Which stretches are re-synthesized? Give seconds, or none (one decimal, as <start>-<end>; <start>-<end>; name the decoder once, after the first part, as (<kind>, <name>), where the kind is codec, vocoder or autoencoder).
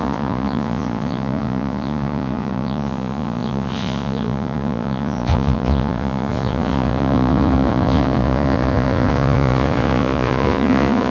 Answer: 0.0-11.1 (vocoder, Vocos)